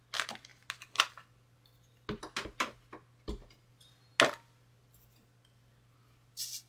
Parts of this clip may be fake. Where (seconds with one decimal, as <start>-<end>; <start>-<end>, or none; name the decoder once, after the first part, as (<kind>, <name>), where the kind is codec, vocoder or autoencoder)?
none